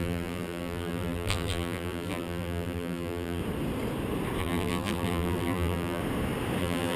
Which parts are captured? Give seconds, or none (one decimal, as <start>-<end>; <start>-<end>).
3.4-4.4; 6.0-6.6